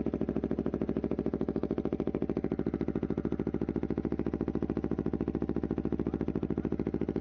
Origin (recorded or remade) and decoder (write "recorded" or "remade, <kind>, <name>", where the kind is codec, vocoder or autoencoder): recorded